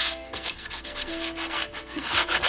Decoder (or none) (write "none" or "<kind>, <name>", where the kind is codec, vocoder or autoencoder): codec, SNAC